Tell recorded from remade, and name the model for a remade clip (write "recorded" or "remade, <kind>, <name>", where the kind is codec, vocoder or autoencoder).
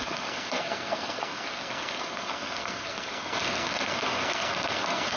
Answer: remade, codec, SNAC